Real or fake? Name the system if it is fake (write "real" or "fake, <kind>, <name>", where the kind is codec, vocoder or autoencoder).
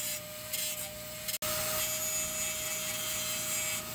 real